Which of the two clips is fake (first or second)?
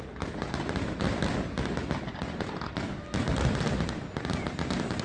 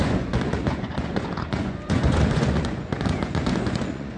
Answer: second